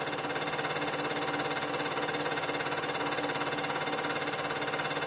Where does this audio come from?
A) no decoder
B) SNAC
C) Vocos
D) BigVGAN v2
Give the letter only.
A